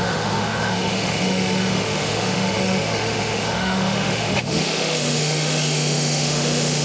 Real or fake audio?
fake